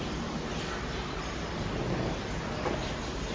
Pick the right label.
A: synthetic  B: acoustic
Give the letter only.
B